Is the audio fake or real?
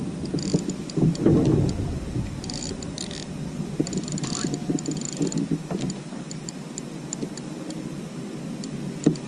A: real